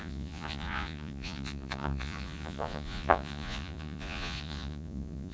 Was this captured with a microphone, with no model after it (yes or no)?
no